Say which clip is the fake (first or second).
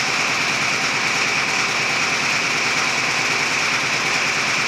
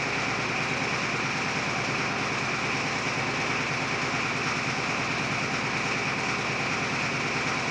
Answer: first